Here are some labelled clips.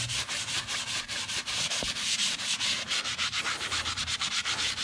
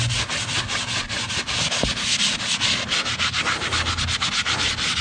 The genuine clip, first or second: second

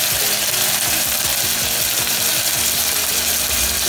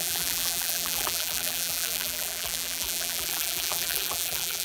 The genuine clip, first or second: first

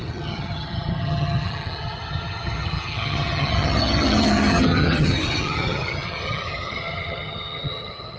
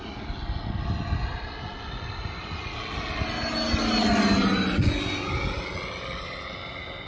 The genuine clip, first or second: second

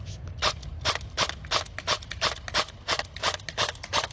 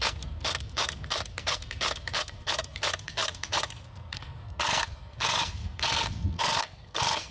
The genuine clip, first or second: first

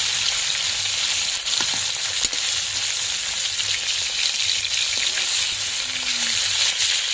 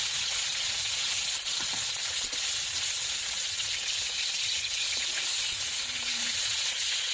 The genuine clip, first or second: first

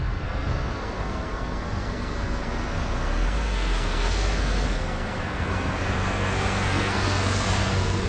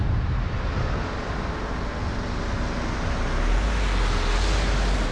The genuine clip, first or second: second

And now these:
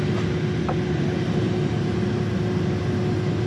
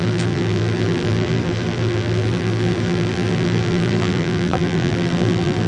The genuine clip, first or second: first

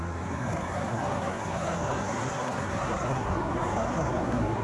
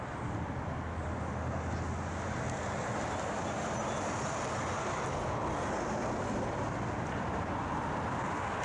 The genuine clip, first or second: second